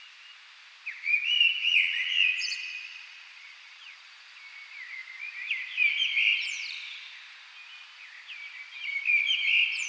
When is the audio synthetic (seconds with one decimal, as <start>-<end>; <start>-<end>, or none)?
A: 1.6-4.1